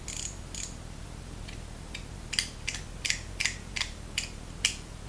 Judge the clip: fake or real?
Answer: real